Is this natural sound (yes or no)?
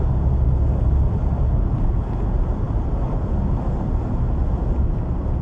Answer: yes